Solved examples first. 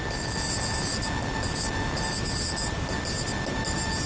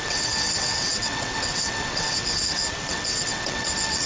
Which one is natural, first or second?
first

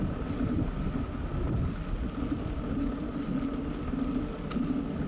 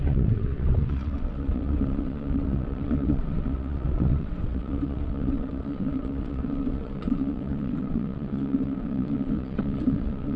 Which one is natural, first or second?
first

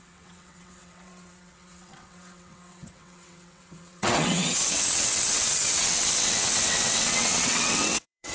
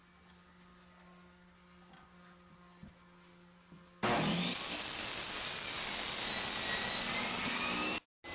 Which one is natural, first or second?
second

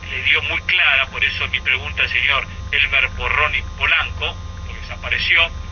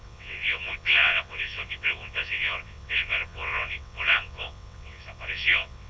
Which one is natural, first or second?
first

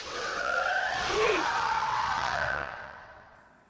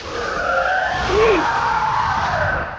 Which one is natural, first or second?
second